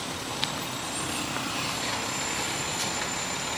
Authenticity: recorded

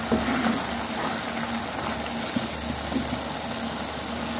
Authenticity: recorded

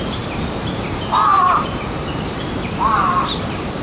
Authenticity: remade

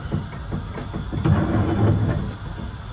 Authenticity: recorded